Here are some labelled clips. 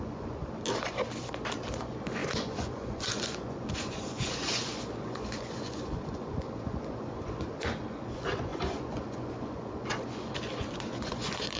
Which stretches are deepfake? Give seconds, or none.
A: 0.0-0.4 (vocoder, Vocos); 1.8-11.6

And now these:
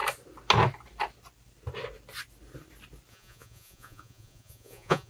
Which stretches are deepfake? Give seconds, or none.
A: 3.1-5.1 (vocoder, Vocos)

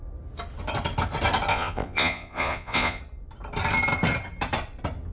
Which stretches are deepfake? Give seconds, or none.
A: 1.5-3.0 (vocoder, Vocos)

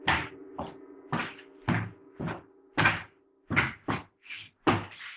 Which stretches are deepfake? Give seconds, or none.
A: none